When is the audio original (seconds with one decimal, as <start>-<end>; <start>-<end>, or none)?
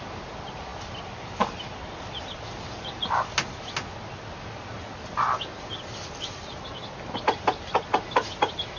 0.0-8.8